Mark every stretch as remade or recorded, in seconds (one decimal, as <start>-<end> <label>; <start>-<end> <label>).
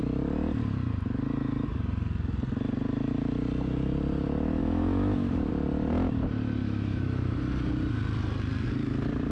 0.0-4.6 recorded; 4.6-5.5 remade; 5.5-6.6 recorded; 6.6-7.3 remade; 7.3-9.3 recorded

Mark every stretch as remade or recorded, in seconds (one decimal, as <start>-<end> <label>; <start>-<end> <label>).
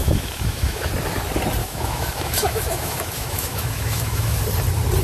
0.0-0.9 remade; 0.9-1.6 recorded; 1.6-4.4 remade; 4.4-5.0 recorded